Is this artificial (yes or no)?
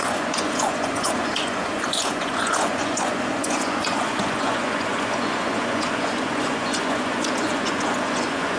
yes